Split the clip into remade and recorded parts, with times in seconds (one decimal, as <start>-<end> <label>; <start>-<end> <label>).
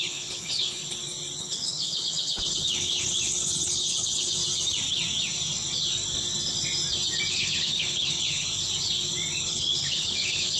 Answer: 0.0-0.8 remade; 0.8-1.4 recorded; 1.4-4.4 remade; 4.4-7.3 recorded; 7.3-8.5 remade; 8.5-9.4 recorded; 9.4-10.6 remade